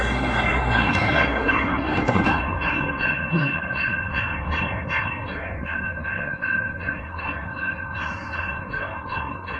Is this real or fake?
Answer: fake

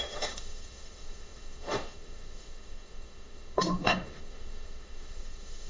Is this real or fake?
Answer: fake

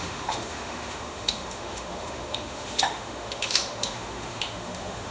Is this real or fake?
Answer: fake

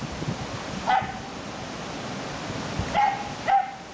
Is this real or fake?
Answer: real